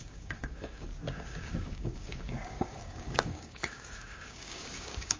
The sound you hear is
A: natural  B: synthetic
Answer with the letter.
B